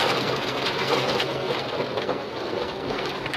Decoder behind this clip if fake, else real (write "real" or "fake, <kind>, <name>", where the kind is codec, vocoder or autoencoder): fake, codec, SNAC